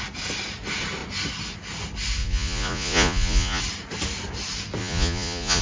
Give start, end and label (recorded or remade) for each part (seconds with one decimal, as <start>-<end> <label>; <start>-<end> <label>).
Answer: 0.0-2.2 recorded; 2.2-3.6 remade; 3.6-4.8 recorded; 4.8-5.6 remade